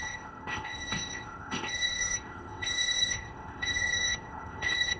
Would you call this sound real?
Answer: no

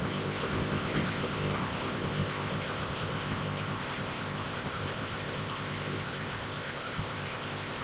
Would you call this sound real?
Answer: no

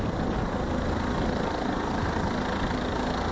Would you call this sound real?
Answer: yes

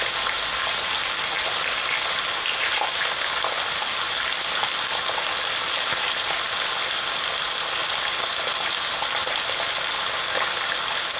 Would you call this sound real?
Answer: yes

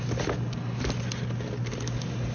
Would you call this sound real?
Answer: yes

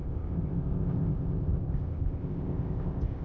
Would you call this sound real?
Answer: no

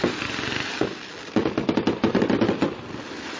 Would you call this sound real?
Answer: yes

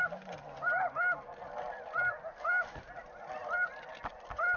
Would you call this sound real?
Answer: yes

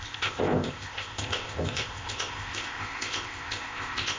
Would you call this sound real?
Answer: no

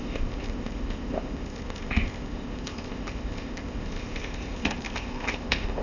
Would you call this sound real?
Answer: no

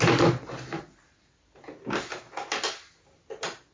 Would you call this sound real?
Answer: yes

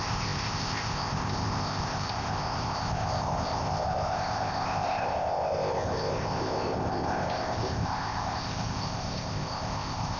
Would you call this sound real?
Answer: no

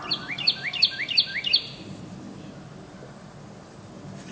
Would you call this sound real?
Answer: yes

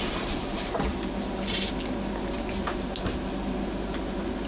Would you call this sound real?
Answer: yes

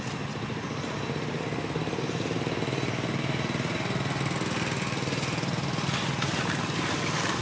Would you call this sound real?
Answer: yes